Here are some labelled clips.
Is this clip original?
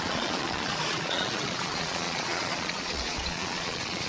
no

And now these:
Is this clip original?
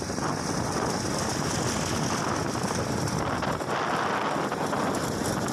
yes